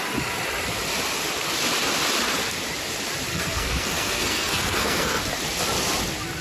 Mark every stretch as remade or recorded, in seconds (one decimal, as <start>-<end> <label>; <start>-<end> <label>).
0.0-3.3 recorded; 3.3-5.2 remade; 5.2-6.4 recorded